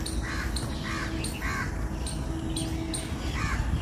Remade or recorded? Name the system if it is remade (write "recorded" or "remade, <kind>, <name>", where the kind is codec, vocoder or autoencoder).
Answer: recorded